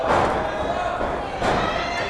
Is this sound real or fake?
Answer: real